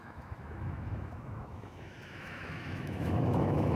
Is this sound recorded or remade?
remade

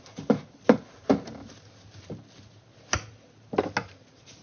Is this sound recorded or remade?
recorded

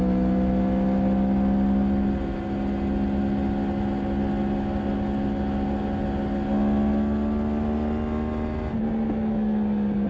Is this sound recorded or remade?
recorded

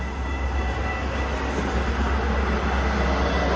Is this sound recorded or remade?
recorded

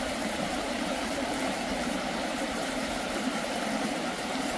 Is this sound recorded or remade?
remade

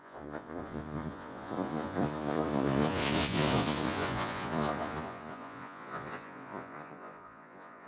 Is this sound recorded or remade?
remade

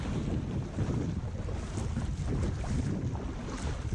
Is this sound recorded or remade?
recorded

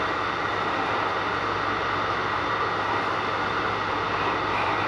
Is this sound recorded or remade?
recorded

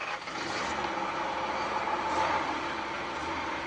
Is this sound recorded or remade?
recorded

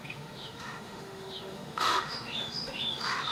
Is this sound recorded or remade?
remade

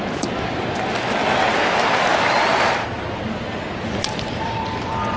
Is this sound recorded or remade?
recorded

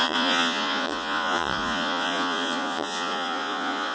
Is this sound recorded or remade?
remade